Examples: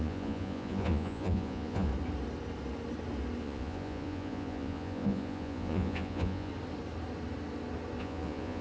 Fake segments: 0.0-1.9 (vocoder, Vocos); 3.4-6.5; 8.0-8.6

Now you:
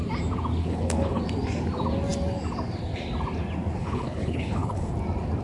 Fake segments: 0.6-1.2 (codec, HILCodec); 3.8-4.9

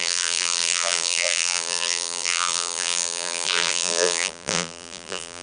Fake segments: 0.0-5.4 (vocoder, BigVGAN v2)